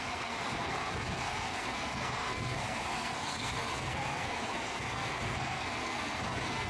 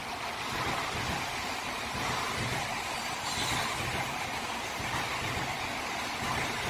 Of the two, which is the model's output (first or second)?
first